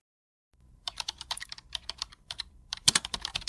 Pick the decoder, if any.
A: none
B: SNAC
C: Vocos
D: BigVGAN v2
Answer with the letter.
D